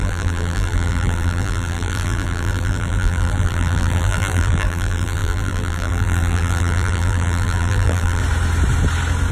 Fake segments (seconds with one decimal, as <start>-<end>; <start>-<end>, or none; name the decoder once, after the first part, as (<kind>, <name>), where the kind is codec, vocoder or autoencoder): 0.0-8.2 (vocoder, BigVGAN v2)